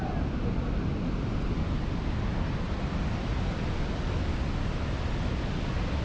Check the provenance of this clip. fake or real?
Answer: real